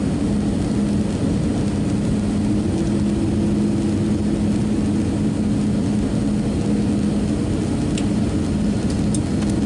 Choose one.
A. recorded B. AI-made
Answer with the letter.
A